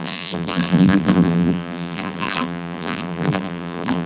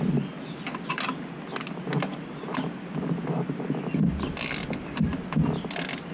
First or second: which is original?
second